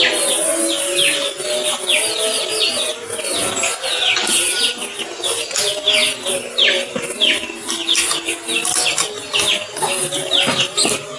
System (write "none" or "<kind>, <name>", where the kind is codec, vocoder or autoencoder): none